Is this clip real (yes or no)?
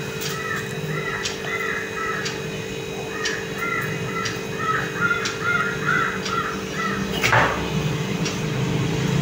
yes